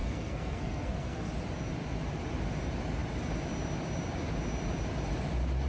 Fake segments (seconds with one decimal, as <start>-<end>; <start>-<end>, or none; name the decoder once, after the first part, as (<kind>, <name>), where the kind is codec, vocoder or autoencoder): 0.0-1.3 (codec, SNAC)